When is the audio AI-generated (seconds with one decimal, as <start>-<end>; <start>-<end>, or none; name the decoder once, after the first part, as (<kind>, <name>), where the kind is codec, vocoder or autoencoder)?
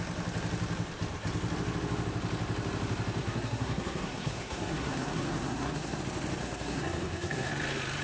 3.2-6.0 (codec, SNAC); 6.4-7.5